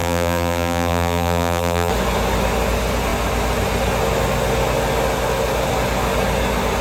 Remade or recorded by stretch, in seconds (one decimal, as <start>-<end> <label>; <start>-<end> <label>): 0.0-1.9 remade; 1.9-6.8 recorded